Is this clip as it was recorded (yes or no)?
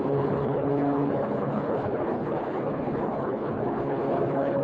no